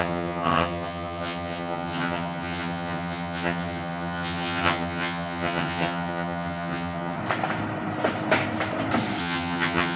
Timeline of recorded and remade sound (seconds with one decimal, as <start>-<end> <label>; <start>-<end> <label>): 0.0-7.2 remade; 7.2-9.2 recorded; 9.2-10.0 remade